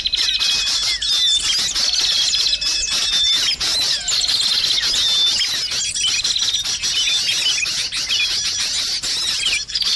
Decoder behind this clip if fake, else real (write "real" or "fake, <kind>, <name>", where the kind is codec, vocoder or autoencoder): real